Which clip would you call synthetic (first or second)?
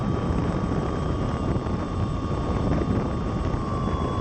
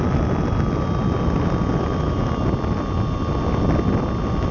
first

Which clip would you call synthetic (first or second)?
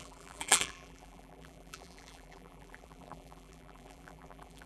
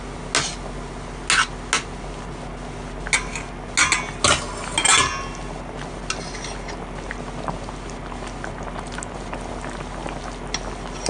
first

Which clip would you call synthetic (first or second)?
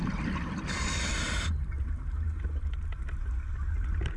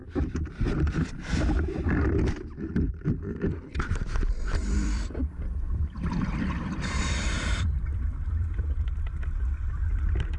second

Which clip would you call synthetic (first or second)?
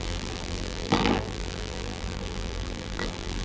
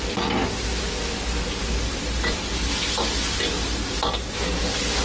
first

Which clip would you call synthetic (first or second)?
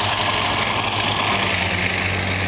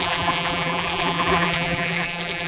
second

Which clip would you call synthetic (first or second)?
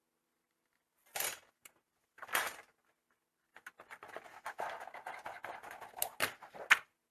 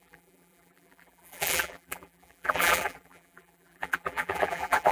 second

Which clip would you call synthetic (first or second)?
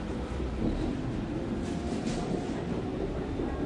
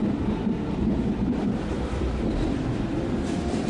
second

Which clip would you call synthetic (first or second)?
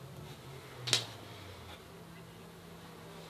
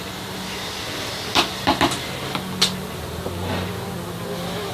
second